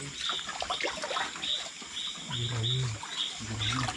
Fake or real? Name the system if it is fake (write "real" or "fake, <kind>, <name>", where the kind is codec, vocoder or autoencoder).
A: real